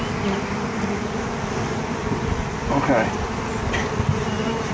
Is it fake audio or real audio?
real